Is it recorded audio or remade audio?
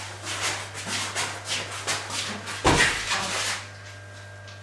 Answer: recorded